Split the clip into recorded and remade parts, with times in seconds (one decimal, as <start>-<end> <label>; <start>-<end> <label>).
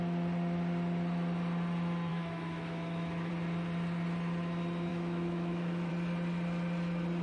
0.0-2.1 recorded; 2.1-3.3 remade; 3.3-4.9 recorded; 4.9-5.9 remade; 5.9-7.2 recorded